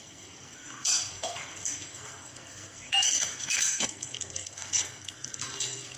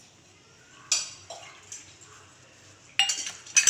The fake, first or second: first